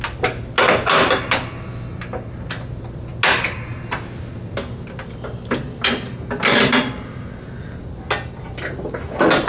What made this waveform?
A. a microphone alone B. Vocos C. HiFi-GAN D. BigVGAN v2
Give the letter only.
A